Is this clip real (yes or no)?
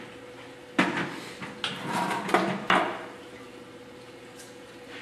yes